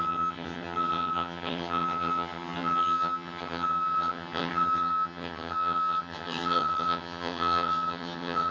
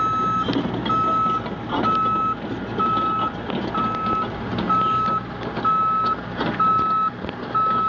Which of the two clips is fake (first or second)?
first